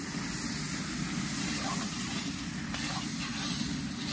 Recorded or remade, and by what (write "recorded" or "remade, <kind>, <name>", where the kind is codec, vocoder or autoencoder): recorded